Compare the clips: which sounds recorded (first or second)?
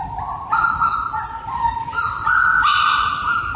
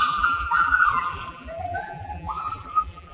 first